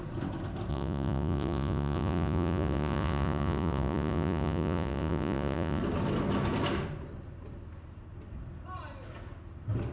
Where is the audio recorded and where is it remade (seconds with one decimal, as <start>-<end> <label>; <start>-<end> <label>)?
0.0-0.7 recorded; 0.7-5.8 remade; 5.8-9.9 recorded